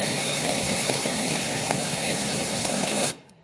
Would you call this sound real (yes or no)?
no